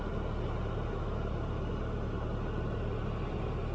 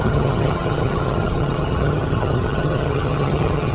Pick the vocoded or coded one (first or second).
second